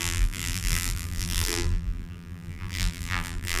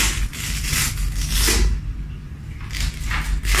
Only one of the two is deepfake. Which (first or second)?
first